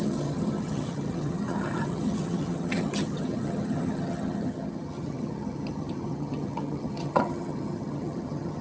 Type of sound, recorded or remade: remade